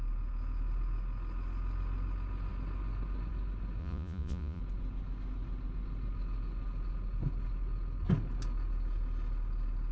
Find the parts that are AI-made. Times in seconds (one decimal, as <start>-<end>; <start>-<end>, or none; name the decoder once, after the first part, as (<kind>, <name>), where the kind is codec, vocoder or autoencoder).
3.8-4.6 (vocoder, Vocos)